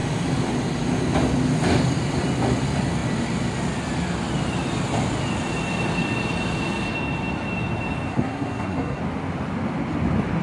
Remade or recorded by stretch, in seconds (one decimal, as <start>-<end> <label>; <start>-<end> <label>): 0.0-8.1 recorded; 8.1-9.0 remade; 9.0-10.4 recorded